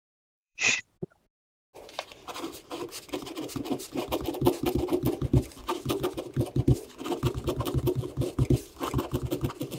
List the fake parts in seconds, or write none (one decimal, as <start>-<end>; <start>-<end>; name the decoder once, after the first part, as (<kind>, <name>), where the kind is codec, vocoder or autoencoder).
0.0-0.8 (vocoder, BigVGAN v2)